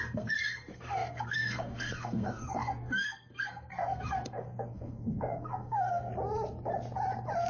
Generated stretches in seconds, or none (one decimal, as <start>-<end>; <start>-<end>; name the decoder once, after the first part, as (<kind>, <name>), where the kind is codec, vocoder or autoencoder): 0.0-6.1 (codec, SNAC)